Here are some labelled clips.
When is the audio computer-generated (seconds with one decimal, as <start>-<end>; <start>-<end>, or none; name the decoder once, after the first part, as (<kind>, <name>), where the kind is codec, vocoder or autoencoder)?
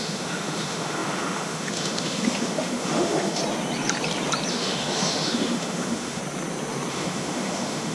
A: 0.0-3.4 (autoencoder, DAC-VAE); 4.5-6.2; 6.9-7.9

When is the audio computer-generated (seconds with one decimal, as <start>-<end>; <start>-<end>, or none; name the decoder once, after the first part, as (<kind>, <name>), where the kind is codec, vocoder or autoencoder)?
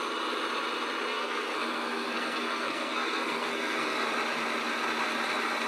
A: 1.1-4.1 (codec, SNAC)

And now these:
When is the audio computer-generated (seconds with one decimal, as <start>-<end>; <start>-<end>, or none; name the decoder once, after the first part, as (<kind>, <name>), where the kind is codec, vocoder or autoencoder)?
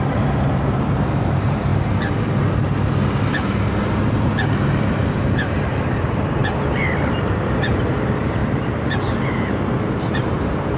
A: 0.0-1.7 (vocoder, BigVGAN v2); 4.8-6.4; 7.3-10.8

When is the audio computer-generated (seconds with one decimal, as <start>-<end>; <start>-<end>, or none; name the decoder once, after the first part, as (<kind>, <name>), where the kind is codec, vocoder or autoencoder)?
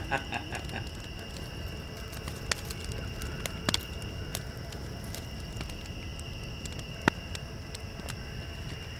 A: none